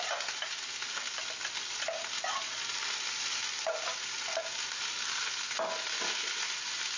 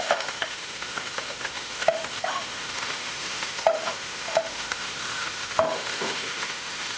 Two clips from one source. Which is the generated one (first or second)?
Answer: second